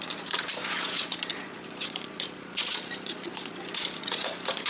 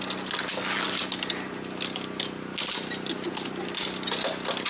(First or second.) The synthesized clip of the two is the first